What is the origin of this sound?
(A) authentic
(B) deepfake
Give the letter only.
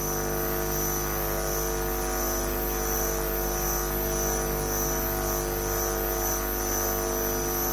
A